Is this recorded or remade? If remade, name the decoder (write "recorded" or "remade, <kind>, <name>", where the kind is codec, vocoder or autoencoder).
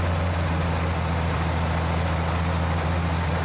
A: recorded